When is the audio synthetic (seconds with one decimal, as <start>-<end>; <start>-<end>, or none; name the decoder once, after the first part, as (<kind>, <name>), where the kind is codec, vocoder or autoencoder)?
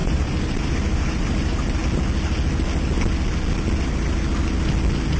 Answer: 0.0-1.8 (vocoder, BigVGAN v2)